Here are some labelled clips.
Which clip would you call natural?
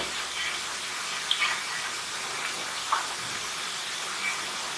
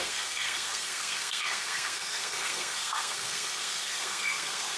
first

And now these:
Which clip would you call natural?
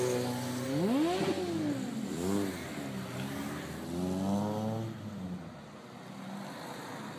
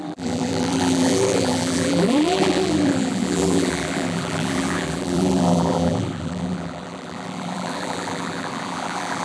first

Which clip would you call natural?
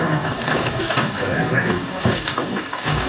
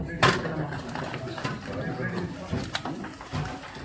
second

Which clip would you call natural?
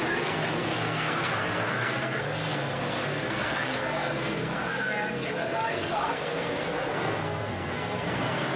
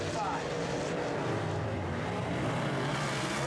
second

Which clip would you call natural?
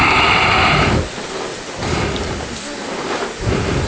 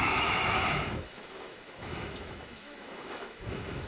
first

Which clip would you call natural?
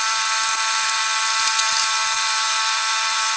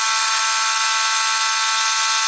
second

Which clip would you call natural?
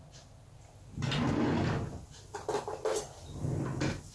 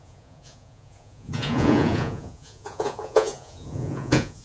first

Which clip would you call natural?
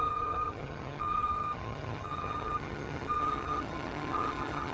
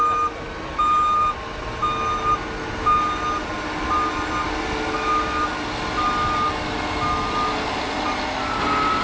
second